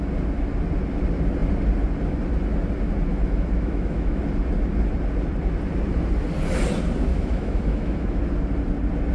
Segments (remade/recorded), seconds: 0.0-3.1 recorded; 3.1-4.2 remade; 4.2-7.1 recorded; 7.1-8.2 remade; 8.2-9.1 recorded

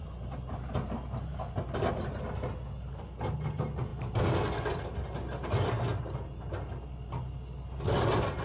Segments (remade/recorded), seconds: 0.0-8.4 recorded

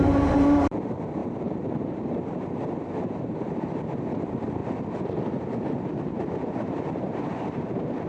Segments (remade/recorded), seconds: 0.0-4.6 remade; 4.6-6.0 recorded; 6.0-8.1 remade